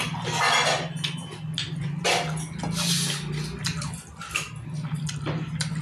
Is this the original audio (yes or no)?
yes